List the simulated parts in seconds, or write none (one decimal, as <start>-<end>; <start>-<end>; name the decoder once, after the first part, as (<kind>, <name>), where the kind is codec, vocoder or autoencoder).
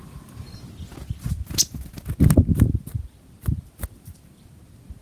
none